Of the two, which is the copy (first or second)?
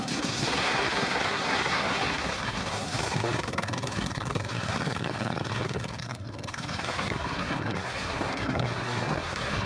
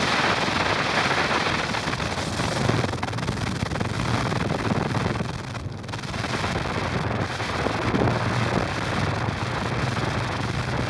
first